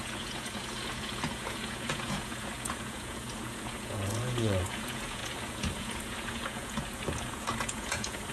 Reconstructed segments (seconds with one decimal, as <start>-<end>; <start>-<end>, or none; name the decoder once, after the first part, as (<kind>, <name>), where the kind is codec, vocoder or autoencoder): 0.0-8.3 (vocoder, Vocos)